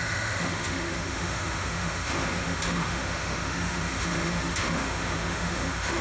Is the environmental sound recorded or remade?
remade